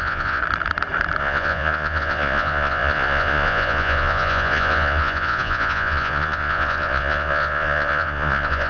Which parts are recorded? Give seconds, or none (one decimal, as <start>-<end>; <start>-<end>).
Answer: 0.4-1.2